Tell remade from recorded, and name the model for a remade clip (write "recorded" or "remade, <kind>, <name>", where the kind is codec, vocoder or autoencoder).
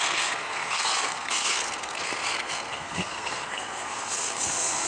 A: remade, codec, SNAC